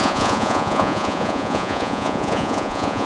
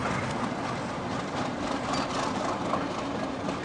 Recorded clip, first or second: second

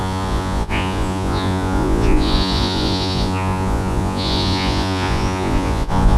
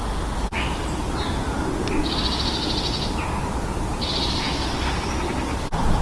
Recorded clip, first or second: second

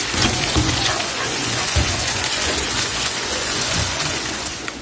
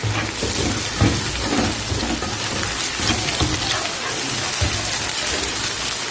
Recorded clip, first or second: second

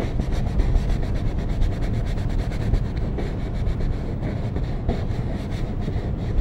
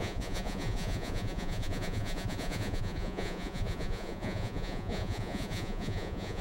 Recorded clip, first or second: first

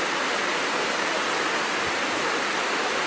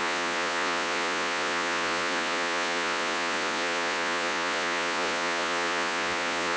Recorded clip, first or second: first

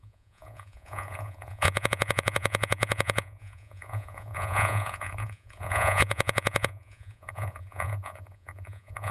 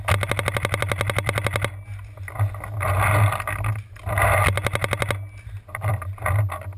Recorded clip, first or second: second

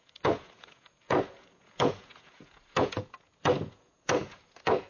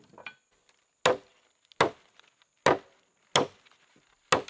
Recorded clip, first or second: second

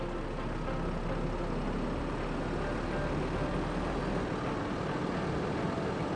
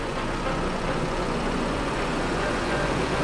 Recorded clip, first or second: first